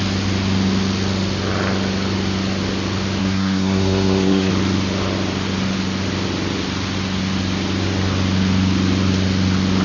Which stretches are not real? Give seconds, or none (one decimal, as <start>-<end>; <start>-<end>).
3.2-4.5